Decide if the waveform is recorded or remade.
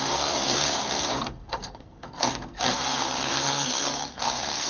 remade